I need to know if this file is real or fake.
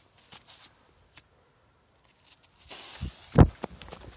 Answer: real